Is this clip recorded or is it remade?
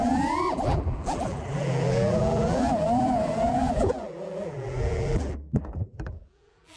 remade